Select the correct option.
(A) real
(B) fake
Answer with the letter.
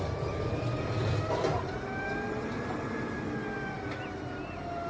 A